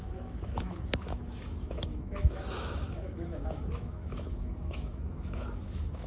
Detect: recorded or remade remade